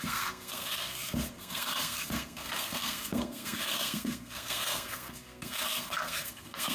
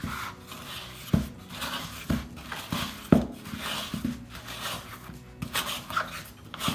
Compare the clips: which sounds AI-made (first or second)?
first